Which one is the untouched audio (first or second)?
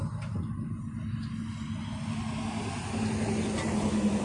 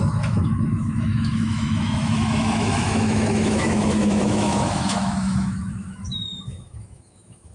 first